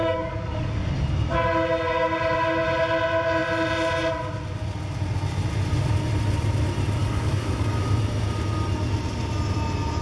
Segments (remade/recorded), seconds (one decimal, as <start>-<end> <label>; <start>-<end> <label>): 0.0-0.7 remade; 0.7-7.0 recorded; 7.0-7.8 remade; 7.8-10.0 recorded